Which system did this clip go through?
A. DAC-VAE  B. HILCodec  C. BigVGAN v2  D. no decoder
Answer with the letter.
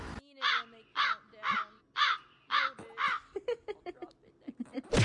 D